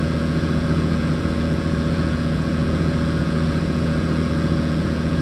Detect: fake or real fake